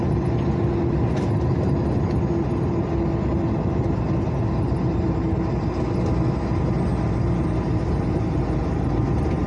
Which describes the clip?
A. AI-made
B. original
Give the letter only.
B